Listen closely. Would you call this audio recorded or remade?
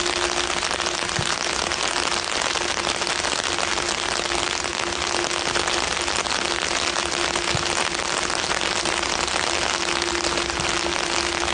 recorded